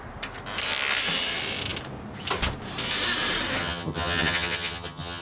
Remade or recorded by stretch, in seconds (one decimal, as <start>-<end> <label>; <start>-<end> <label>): 0.0-3.6 recorded; 3.6-5.2 remade